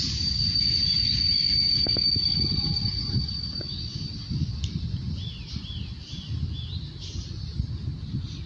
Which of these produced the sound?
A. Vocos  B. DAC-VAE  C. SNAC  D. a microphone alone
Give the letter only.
D